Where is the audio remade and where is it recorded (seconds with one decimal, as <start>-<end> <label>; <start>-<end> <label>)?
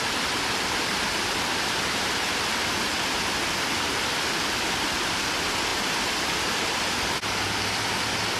0.0-1.5 recorded; 1.5-2.2 remade; 2.2-5.7 recorded; 5.7-6.8 remade; 6.8-8.4 recorded